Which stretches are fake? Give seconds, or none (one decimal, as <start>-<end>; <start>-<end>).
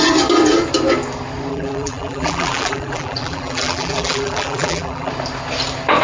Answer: 1.5-5.1